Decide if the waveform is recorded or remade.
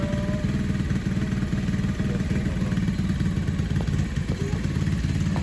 recorded